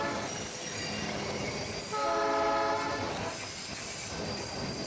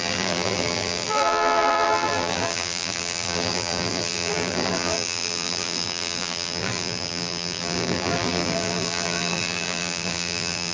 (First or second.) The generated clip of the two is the second